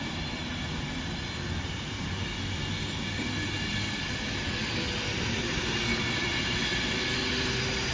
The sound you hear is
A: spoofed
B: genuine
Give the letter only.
B